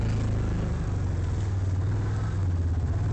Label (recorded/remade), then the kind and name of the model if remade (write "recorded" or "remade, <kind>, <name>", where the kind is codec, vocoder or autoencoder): recorded